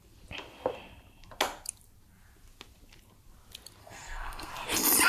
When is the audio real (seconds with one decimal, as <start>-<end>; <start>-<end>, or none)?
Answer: 0.0-3.8; 4.5-5.1